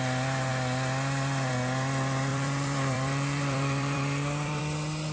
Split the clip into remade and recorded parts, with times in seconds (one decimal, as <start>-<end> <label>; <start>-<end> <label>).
0.0-2.3 recorded; 2.3-4.6 remade; 4.6-5.1 recorded